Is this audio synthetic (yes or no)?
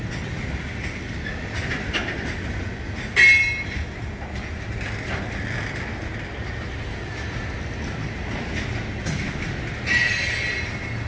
no